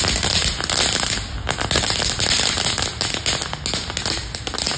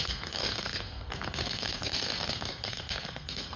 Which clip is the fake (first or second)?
second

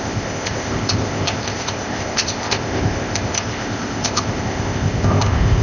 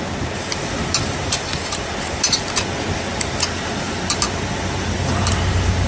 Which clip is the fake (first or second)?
first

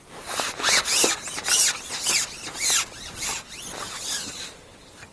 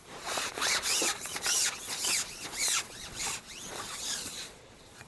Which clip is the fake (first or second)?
second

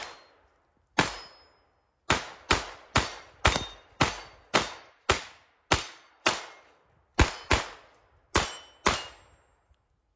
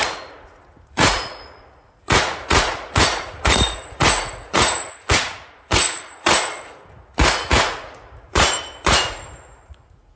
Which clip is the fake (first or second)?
second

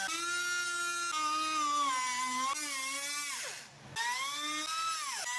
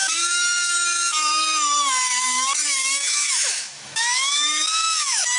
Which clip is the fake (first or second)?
second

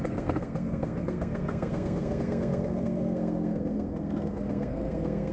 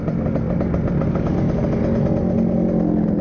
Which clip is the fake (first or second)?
first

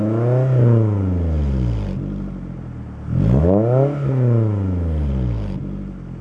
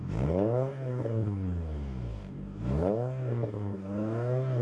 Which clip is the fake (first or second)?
second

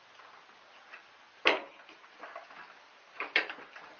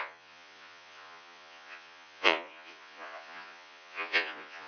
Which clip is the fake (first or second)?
second